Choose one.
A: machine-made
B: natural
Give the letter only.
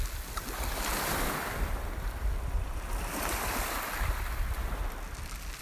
B